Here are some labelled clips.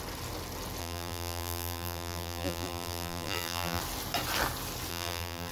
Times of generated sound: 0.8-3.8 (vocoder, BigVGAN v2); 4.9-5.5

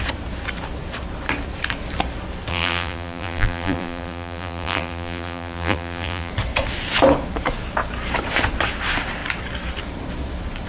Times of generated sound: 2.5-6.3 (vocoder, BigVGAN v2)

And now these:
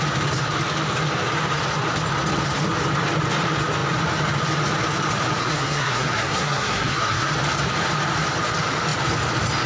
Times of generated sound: 5.4-7.3 (codec, SNAC)